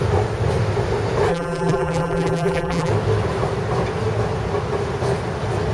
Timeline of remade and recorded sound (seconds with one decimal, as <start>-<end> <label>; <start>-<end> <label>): 0.0-1.3 recorded; 1.3-2.9 remade; 2.9-5.7 recorded